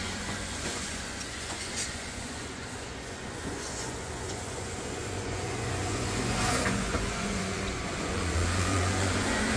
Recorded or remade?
remade